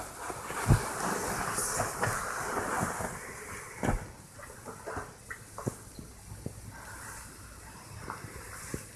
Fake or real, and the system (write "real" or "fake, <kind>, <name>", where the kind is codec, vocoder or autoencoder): real